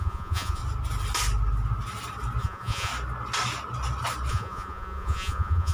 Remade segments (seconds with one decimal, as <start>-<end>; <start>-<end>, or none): 0.0-0.6; 2.4-2.9; 4.3-5.7